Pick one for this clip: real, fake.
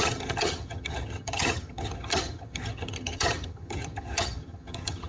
fake